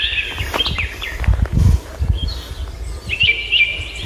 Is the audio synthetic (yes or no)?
no